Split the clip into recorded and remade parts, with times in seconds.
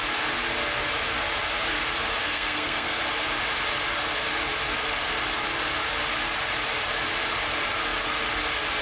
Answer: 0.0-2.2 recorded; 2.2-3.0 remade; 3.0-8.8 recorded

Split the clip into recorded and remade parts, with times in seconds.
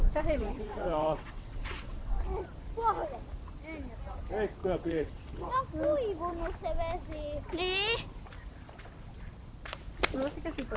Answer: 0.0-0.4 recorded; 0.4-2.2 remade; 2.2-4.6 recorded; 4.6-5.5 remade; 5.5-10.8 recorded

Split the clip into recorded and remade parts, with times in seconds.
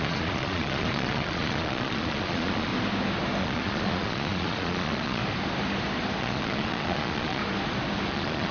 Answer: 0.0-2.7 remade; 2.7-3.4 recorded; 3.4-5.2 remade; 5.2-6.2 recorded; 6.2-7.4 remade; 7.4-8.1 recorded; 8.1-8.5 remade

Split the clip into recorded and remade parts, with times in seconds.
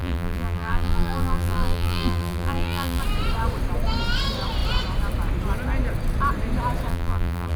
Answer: 0.0-3.0 remade; 3.0-6.9 recorded; 6.9-7.6 remade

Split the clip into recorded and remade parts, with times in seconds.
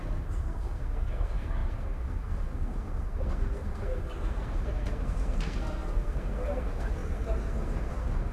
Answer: 0.0-8.3 remade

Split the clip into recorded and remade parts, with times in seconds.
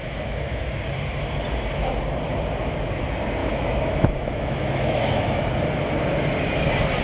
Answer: 0.0-0.8 remade; 0.8-3.4 recorded; 3.4-5.4 remade; 5.4-7.0 recorded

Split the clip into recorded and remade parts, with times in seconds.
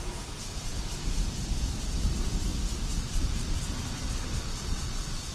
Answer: 0.0-2.5 remade; 2.5-4.8 recorded; 4.8-5.3 remade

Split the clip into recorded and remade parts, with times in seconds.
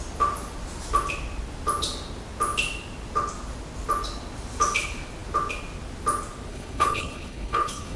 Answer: 0.0-6.5 recorded; 6.5-8.0 remade